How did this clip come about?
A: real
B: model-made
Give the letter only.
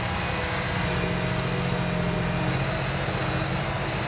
A